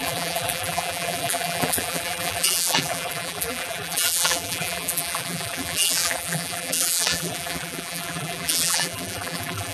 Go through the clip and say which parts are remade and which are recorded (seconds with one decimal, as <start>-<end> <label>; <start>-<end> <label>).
0.0-9.7 remade